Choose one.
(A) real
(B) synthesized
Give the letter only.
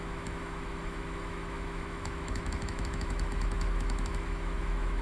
B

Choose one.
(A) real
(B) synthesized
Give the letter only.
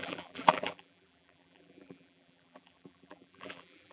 B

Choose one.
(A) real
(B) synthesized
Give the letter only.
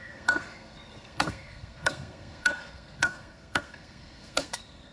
B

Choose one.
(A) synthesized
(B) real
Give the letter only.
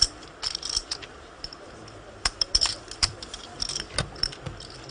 A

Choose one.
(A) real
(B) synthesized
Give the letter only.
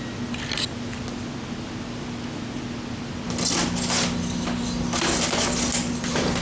A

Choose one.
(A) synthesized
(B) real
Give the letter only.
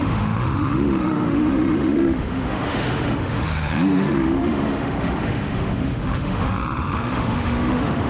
A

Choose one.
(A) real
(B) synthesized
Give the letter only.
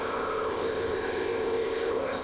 B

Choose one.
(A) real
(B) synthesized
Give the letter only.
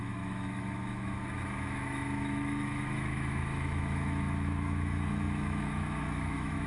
B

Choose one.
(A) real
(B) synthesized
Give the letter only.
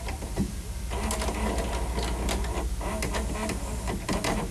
A